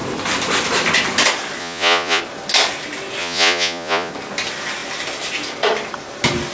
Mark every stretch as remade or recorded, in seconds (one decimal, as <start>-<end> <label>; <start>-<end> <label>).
0.0-1.6 recorded; 1.6-2.2 remade; 2.2-3.2 recorded; 3.2-4.1 remade; 4.1-6.5 recorded